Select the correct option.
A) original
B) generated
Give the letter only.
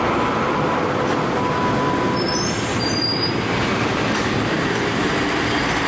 B